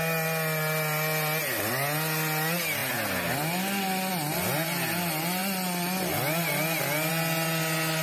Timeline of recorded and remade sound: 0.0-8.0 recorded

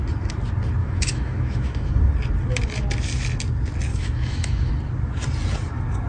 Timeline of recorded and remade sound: 0.0-0.8 recorded; 0.8-1.9 remade; 1.9-3.9 recorded; 3.9-4.7 remade; 4.7-6.1 recorded

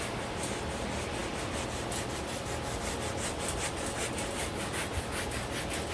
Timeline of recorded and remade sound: 0.0-5.9 recorded

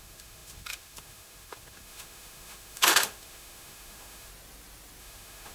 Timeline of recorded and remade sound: 0.0-4.3 remade; 4.3-5.0 recorded; 5.0-5.5 remade

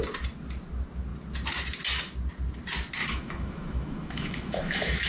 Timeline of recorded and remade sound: 0.0-3.0 recorded; 3.0-5.1 remade

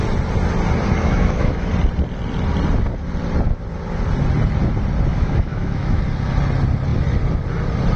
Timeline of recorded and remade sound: 0.0-1.0 recorded; 1.0-1.7 remade; 1.7-5.1 recorded; 5.1-6.0 remade; 6.0-8.0 recorded